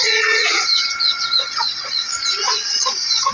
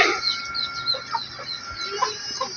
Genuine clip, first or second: second